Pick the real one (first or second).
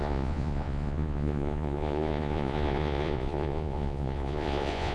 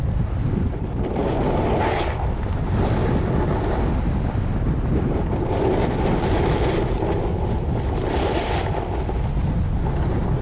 second